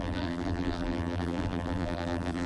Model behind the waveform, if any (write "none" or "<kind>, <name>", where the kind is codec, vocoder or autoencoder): vocoder, BigVGAN v2